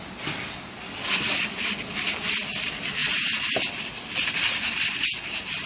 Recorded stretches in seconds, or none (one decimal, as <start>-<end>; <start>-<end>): 0.0-3.0; 3.6-5.7